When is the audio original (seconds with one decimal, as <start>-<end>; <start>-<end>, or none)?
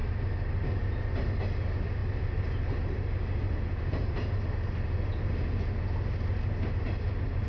0.0-7.5